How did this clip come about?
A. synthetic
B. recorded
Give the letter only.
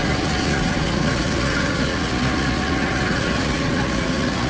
A